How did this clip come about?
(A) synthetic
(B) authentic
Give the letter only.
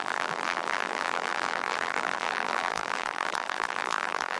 A